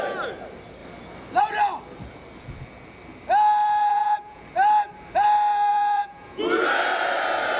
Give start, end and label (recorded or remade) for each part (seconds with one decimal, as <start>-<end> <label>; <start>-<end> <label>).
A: 0.0-3.8 recorded; 3.8-4.4 remade; 4.4-5.7 recorded; 5.7-6.4 remade; 6.4-7.6 recorded